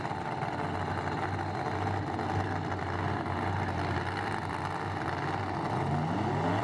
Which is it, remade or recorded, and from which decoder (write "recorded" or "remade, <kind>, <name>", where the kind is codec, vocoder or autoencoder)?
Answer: recorded